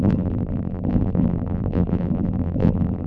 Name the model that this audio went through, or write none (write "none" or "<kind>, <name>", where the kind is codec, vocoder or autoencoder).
vocoder, BigVGAN v2